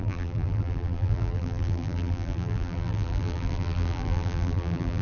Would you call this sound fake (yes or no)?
yes